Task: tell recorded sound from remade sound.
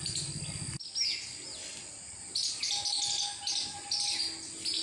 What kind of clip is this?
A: recorded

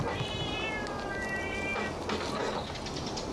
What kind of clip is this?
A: recorded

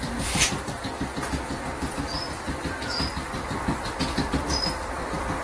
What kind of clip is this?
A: recorded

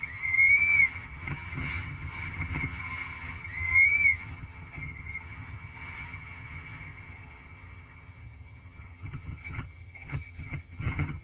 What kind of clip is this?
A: remade